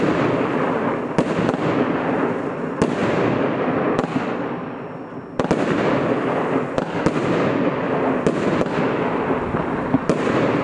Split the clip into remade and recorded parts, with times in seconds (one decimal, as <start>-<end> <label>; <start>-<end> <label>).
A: 0.0-10.6 recorded

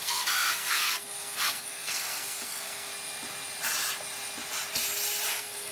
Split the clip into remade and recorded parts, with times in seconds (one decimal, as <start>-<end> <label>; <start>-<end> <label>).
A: 0.0-2.9 remade; 2.9-5.3 recorded; 5.3-5.7 remade